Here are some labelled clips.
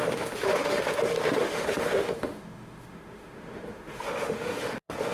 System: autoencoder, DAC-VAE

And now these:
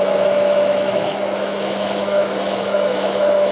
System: autoencoder, DAC-VAE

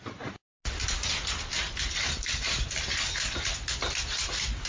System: none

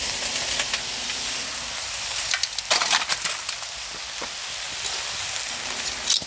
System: none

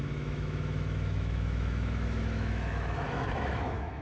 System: autoencoder, DAC-VAE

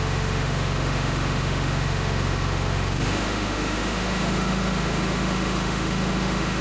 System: autoencoder, DAC-VAE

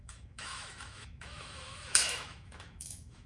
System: autoencoder, DAC-VAE